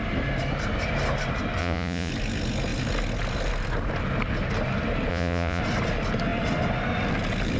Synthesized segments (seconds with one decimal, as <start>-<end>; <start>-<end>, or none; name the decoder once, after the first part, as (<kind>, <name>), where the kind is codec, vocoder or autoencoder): 1.6-2.1 (vocoder, Vocos); 5.1-5.6